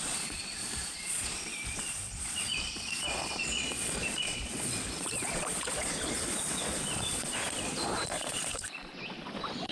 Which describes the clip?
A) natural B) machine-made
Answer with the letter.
B